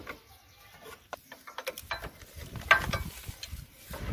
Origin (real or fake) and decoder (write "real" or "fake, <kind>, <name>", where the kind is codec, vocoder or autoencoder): real